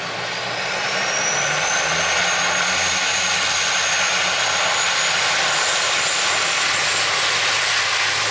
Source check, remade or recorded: recorded